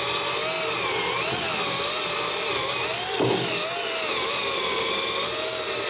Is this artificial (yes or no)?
no